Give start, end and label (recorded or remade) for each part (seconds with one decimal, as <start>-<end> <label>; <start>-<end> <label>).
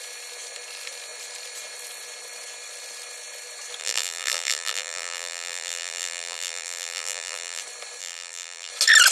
0.0-3.8 recorded; 3.8-7.6 remade; 7.6-8.0 recorded; 8.0-8.7 remade; 8.7-9.1 recorded